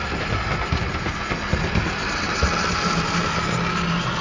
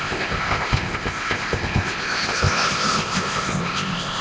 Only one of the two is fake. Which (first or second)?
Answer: second